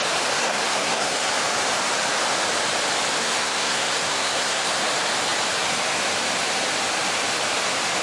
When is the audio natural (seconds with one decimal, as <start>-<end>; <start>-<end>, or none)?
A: 0.0-0.4; 1.3-3.2; 4.7-8.0